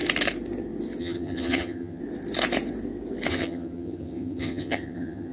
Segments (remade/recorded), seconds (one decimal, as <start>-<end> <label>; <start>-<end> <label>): 0.0-1.0 recorded; 1.0-2.0 remade; 2.0-3.3 recorded; 3.3-5.3 remade